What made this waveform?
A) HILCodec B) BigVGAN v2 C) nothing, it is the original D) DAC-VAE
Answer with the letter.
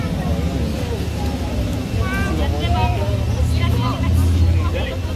C